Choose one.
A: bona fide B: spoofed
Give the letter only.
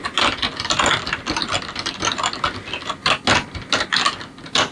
A